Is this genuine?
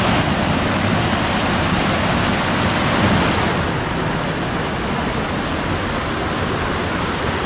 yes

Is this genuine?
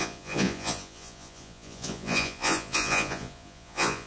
no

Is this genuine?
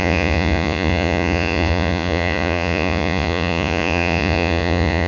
no